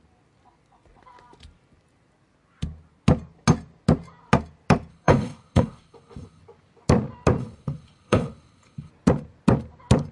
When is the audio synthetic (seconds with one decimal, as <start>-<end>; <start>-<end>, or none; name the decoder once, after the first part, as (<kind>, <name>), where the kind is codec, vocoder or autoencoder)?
4.9-6.4 (codec, HILCodec); 7.4-8.9